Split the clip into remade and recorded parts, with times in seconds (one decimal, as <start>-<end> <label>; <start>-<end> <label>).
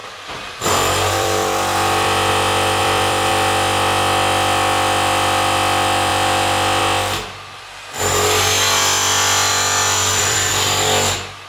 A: 0.0-2.3 remade; 2.3-2.8 recorded; 2.8-3.3 remade; 3.3-6.1 recorded; 6.1-6.8 remade; 6.8-9.5 recorded; 9.5-10.5 remade; 10.5-11.5 recorded